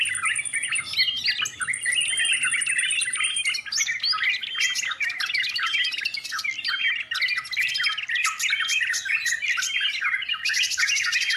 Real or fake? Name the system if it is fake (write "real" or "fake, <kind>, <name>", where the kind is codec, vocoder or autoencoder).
real